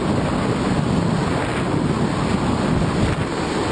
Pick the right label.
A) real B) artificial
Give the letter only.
A